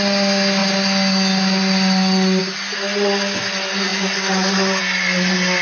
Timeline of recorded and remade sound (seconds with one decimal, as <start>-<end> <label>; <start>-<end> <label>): 0.0-5.6 recorded